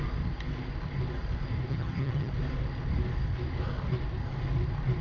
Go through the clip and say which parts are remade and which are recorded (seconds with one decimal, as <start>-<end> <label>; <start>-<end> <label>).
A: 0.0-1.7 recorded; 1.7-2.3 remade; 2.3-5.0 recorded